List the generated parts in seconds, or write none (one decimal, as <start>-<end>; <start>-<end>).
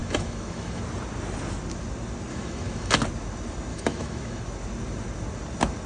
0.0-0.8; 2.3-2.9; 3.7-4.4